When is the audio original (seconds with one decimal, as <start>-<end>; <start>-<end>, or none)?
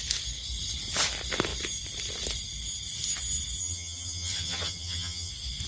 0.0-3.6; 5.3-5.7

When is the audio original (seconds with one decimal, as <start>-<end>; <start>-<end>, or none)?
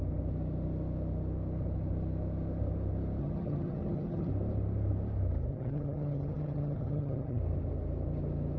0.0-3.2; 4.3-5.5; 7.4-8.6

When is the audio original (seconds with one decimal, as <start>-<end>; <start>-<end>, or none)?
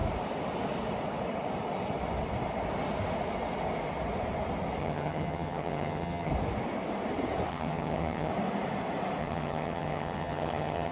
0.0-4.8; 6.3-7.5; 8.3-9.2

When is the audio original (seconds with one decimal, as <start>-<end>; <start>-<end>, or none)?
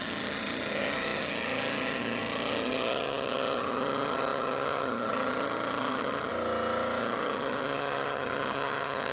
6.3-7.0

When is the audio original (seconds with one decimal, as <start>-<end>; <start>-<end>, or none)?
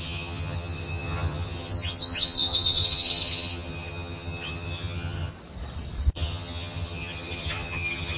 5.3-6.1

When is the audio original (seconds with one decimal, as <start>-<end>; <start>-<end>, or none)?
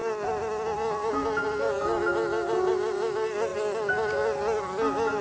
0.0-5.2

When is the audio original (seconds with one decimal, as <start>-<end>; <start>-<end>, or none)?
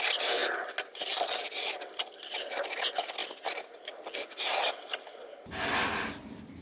0.0-6.6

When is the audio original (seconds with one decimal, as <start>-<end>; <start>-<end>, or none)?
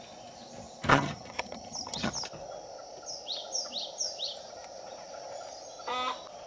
0.0-0.9; 2.1-6.5